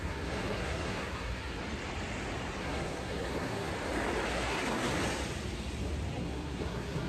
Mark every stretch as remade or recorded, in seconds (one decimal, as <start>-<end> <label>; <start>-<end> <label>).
0.0-1.6 remade; 1.6-2.6 recorded; 2.6-3.7 remade; 3.7-4.3 recorded; 4.3-4.9 remade; 4.9-6.2 recorded; 6.2-7.1 remade